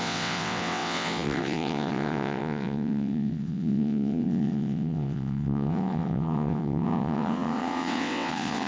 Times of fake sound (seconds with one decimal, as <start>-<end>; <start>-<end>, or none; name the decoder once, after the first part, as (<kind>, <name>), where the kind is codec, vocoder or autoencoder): 0.0-8.7 (vocoder, WaveNeXt)